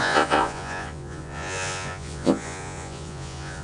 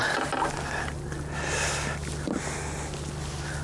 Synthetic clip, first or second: first